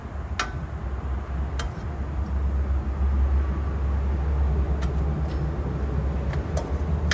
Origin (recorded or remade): recorded